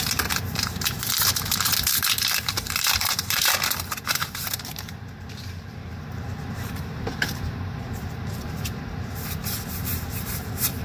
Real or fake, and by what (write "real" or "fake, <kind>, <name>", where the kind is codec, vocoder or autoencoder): fake, vocoder, BigVGAN v2